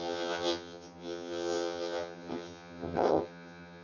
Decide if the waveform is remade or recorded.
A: remade